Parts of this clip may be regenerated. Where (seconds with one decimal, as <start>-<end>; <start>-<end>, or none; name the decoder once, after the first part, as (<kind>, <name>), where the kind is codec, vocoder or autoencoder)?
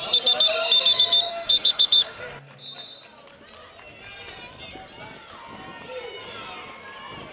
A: 1.3-2.2 (autoencoder, DAC-VAE)